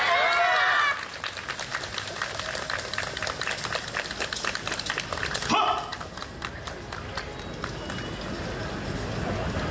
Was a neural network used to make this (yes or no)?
no